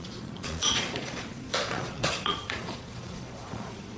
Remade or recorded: remade